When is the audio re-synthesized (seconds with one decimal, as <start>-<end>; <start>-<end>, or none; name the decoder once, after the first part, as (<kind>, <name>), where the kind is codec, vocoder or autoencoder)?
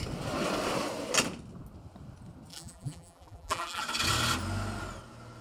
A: 2.5-3.8 (vocoder, BigVGAN v2)